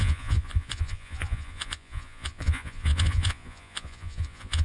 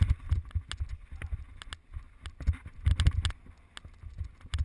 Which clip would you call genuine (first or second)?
second